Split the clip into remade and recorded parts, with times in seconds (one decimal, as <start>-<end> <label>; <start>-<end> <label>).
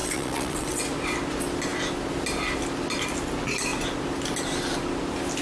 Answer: 0.0-0.8 remade; 0.8-5.4 recorded